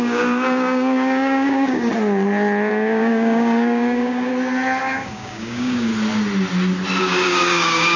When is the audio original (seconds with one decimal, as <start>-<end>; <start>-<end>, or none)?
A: 1.9-2.7; 4.3-4.8; 5.9-7.0